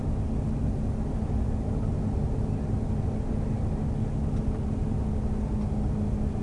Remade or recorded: recorded